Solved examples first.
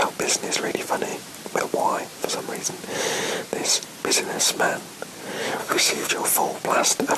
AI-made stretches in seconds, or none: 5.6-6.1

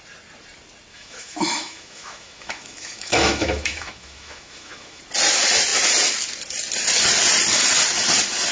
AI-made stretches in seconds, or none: 0.9-5.0

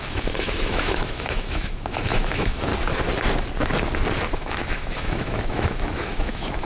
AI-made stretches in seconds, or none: 0.0-2.7; 4.3-6.6

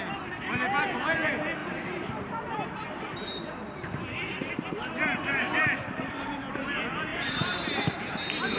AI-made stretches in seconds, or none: 1.6-6.5; 7.1-8.0

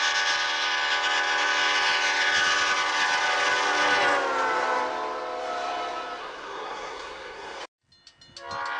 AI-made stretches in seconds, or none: 6.2-7.6

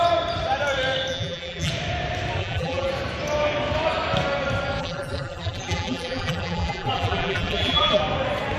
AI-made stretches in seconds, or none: 1.1-1.7; 2.4-2.9; 4.8-8.0